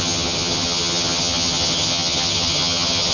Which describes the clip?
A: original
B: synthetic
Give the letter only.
B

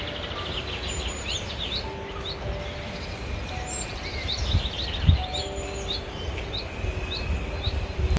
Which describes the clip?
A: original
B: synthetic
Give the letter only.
A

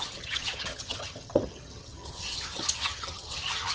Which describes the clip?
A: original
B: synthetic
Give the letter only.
B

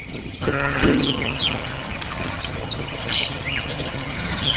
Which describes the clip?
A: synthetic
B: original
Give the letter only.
A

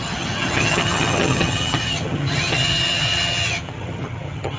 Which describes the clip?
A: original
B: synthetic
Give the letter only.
B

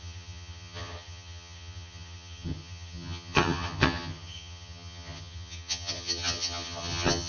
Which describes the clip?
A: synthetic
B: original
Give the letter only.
A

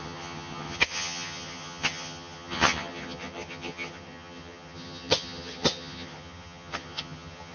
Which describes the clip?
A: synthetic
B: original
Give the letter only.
A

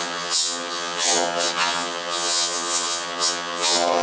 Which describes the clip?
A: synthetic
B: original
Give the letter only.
A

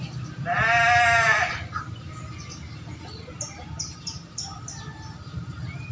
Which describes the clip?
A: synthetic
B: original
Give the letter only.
B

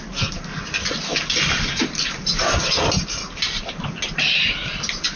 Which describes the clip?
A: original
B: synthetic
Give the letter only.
A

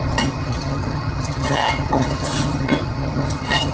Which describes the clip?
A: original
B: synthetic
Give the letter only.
B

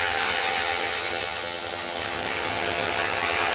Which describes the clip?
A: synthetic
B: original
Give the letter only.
A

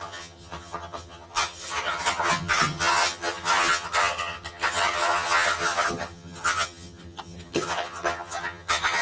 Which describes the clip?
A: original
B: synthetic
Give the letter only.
B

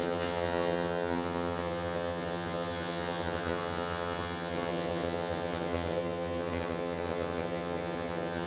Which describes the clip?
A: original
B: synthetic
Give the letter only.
B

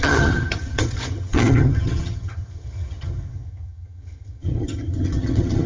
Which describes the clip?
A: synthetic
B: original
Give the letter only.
A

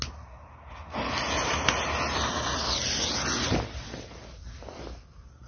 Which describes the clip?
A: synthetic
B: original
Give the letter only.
B